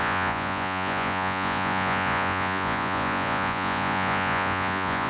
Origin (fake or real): fake